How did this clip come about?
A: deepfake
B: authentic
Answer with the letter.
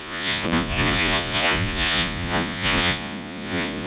A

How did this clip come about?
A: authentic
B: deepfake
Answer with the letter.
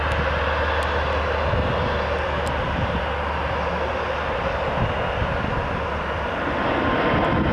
A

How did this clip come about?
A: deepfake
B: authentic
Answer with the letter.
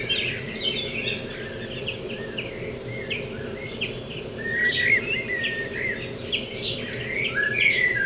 A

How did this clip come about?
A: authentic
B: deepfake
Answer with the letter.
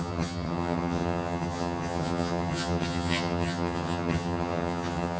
B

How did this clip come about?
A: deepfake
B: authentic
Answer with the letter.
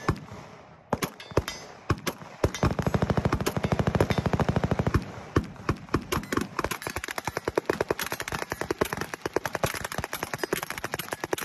B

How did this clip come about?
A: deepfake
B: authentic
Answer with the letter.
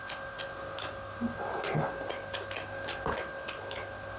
B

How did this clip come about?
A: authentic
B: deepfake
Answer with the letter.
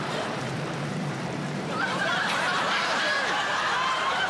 B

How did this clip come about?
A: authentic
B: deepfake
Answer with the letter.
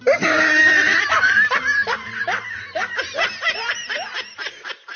B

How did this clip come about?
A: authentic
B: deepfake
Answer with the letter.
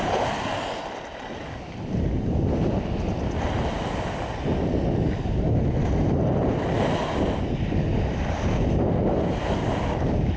A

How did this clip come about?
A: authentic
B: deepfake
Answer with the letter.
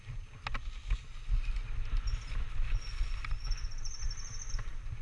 A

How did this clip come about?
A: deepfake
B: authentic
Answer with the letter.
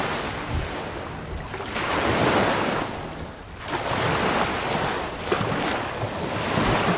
B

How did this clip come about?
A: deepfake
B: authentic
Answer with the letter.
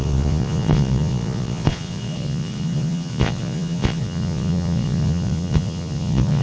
A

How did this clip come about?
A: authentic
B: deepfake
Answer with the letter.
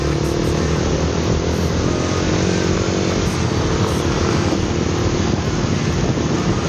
A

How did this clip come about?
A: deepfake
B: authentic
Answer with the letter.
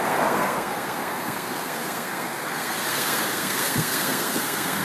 A